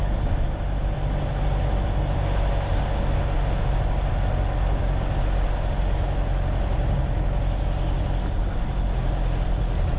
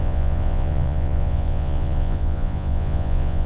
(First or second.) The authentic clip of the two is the first